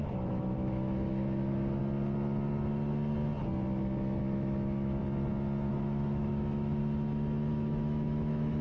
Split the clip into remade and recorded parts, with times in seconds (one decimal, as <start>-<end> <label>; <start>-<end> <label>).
0.0-1.8 remade; 1.8-4.2 recorded; 4.2-5.0 remade; 5.0-5.7 recorded; 5.7-6.8 remade; 6.8-7.5 recorded; 7.5-8.6 remade